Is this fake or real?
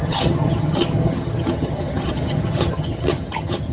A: fake